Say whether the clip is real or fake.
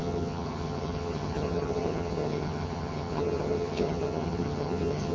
fake